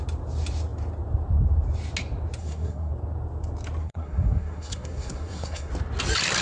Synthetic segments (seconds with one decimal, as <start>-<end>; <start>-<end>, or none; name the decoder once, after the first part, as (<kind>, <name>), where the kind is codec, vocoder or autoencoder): 2.4-2.9 (codec, SNAC); 3.8-5.7